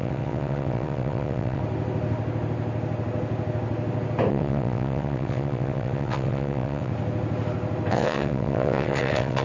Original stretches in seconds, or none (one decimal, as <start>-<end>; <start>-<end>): 1.6-4.3; 6.9-7.9